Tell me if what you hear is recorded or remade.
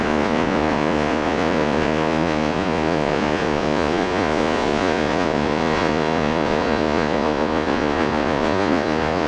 remade